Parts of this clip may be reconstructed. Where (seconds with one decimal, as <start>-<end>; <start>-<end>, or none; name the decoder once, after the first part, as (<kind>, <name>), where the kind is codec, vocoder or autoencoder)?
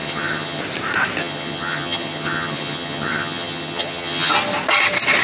0.0-0.6 (vocoder, HiFi-GAN); 1.2-4.3